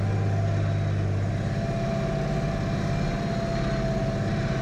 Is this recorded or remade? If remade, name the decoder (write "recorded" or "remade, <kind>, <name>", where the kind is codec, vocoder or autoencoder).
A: recorded